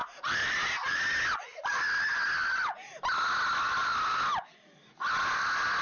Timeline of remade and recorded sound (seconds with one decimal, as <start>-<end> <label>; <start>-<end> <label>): 0.0-5.8 recorded